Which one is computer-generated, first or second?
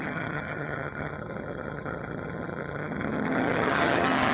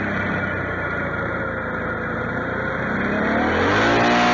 first